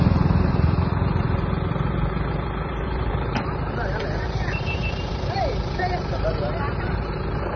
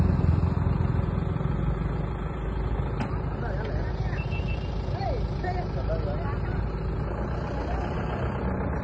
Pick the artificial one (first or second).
first